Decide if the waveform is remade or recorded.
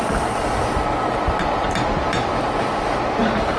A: recorded